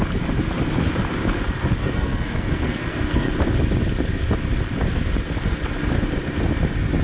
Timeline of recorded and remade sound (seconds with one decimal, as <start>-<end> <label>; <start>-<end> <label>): 0.0-1.8 recorded; 1.8-3.3 remade; 3.3-7.0 recorded